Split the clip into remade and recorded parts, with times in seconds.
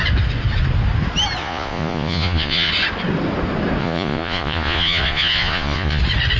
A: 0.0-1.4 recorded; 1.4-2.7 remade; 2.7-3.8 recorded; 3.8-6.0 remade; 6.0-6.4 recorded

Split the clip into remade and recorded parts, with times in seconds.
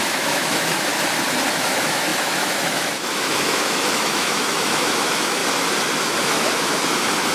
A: 0.0-0.9 remade; 0.9-1.5 recorded; 1.5-5.4 remade; 5.4-6.2 recorded; 6.2-7.3 remade